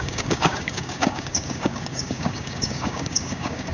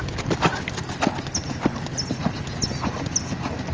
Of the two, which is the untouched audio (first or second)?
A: second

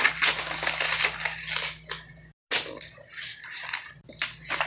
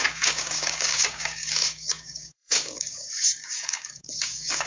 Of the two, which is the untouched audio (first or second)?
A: first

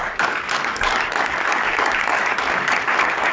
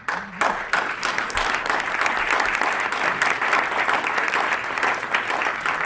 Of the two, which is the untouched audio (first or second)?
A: second